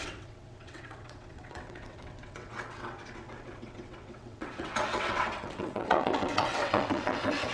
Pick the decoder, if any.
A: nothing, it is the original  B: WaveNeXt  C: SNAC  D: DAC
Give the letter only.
B